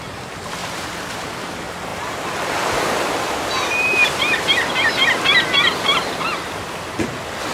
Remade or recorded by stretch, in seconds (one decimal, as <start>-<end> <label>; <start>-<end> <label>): 0.0-0.6 recorded; 0.6-1.3 remade; 1.3-7.5 recorded